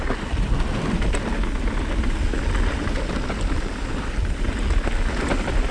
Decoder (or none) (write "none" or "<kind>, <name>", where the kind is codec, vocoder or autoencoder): none